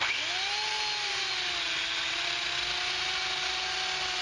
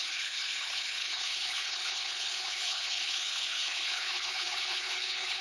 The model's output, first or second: second